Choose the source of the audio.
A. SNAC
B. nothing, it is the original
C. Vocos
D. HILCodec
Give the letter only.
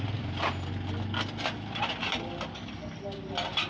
B